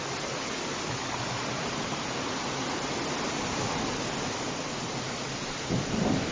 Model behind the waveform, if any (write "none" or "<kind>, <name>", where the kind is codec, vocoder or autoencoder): none